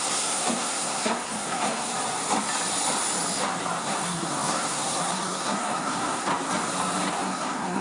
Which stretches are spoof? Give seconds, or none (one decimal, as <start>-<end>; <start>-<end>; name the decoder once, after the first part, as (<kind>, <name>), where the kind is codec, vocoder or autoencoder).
0.0-1.9 (codec, SNAC); 3.8-6.3; 7.2-7.8